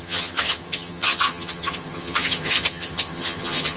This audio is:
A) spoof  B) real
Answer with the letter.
A